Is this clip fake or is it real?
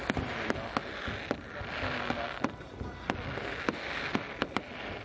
real